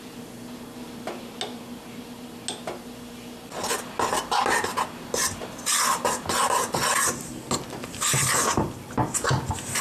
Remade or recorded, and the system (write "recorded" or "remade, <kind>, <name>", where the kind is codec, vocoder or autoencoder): recorded